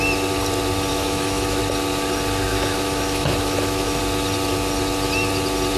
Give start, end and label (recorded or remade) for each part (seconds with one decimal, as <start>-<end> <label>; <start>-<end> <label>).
0.0-0.9 recorded; 0.9-1.6 remade; 1.6-2.5 recorded; 2.5-4.0 remade; 4.0-5.8 recorded